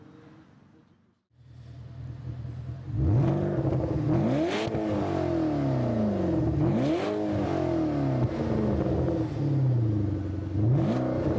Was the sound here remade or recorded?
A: recorded